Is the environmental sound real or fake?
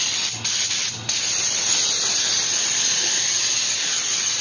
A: real